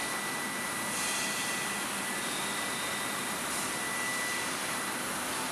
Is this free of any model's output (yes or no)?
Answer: yes